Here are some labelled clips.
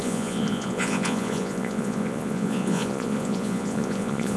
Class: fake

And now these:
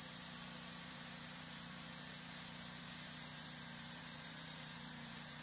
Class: fake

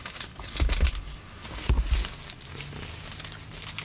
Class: real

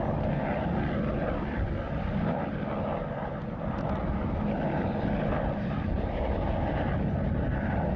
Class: real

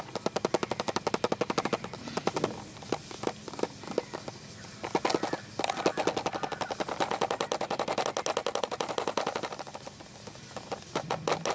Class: real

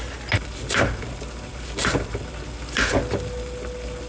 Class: real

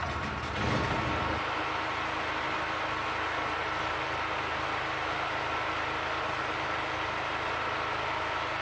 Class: real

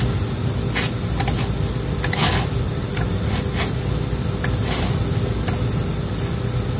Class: real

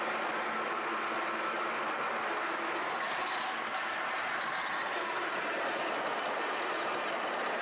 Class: real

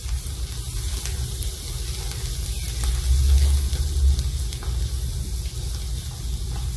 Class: real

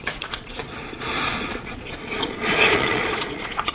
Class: fake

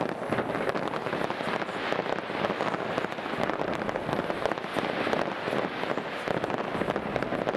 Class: real